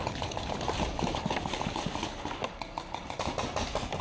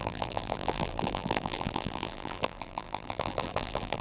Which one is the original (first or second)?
first